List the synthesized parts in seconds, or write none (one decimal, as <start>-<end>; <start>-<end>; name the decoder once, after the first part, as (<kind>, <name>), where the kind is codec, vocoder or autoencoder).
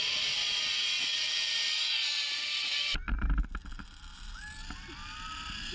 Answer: none